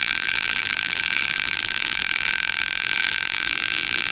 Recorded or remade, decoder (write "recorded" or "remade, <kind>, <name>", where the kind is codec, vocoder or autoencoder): remade, vocoder, BigVGAN v2